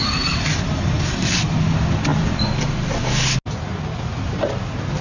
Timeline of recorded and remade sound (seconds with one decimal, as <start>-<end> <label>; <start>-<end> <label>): 0.0-5.0 recorded